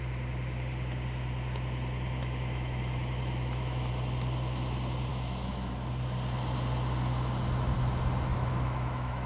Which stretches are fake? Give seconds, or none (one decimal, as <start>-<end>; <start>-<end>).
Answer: 2.2-3.9; 5.1-5.7; 8.3-9.3